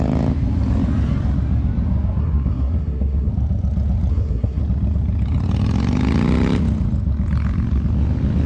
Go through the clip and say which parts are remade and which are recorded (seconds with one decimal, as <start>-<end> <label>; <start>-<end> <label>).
0.0-2.2 recorded; 2.2-3.3 remade; 3.3-4.1 recorded; 4.1-4.6 remade; 4.6-8.5 recorded